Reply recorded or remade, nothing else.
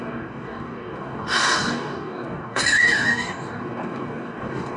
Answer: remade